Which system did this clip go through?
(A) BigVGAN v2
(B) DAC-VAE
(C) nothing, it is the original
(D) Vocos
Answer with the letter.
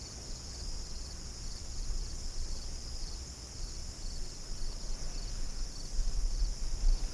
C